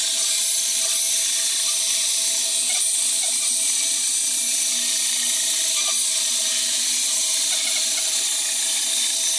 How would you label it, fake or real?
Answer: real